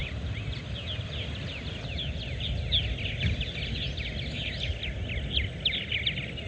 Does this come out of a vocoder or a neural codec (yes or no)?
no